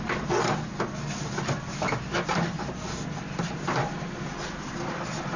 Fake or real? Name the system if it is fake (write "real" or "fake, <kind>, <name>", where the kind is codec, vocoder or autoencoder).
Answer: real